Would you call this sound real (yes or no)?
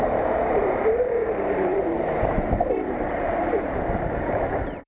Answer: no